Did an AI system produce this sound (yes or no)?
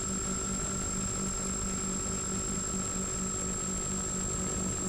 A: no